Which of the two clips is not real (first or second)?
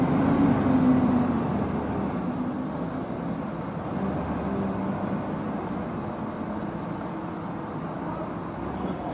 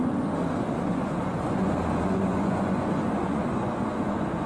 second